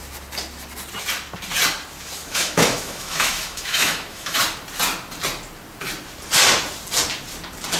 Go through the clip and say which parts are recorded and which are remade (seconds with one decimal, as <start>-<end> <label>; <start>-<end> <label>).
0.0-2.2 recorded; 2.2-4.4 remade; 4.4-7.8 recorded